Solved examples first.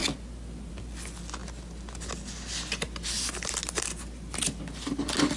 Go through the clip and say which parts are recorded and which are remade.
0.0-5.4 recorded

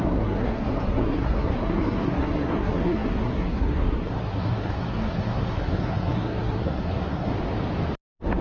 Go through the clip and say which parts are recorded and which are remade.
0.0-7.3 remade; 7.3-8.4 recorded

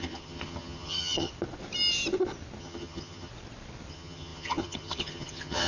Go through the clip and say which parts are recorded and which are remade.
0.0-1.3 remade; 1.3-2.6 recorded; 2.6-3.3 remade; 3.3-3.9 recorded; 3.9-5.7 remade

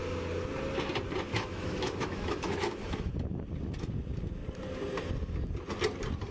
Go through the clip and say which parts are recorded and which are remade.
0.0-1.3 recorded; 1.3-3.1 remade; 3.1-6.3 recorded

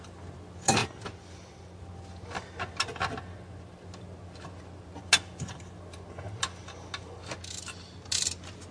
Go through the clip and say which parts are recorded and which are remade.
0.0-8.7 recorded

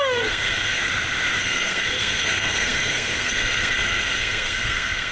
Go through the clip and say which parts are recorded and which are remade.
0.0-0.8 remade; 0.8-1.4 recorded; 1.4-5.1 remade

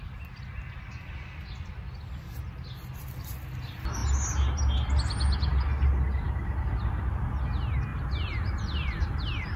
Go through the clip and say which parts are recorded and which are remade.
0.0-7.9 recorded; 7.9-9.6 remade

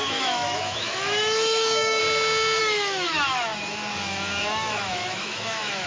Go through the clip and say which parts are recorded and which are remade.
0.0-2.0 remade; 2.0-2.6 recorded; 2.6-3.5 remade; 3.5-4.1 recorded; 4.1-5.9 remade